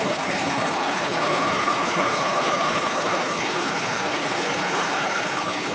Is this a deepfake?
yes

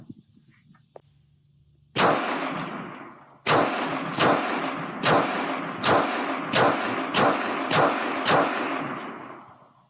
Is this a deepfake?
no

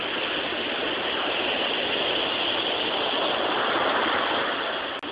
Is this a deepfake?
no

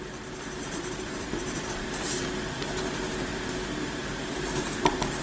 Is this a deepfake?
no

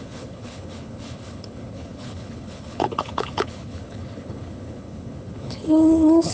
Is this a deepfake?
yes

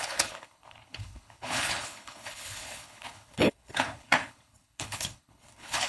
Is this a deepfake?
yes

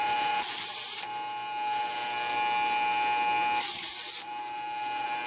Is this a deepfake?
no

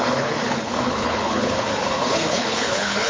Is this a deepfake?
yes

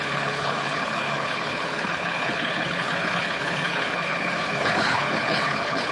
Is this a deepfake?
yes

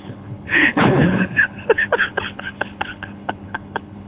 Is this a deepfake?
yes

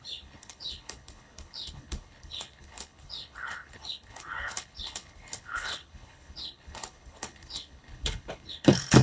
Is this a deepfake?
yes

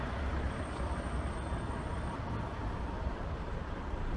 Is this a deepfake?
no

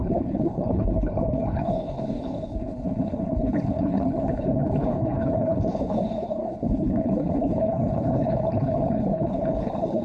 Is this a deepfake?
yes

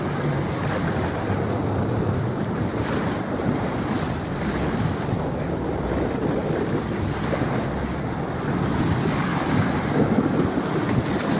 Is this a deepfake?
no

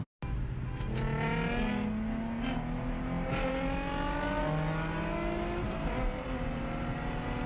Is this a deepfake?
no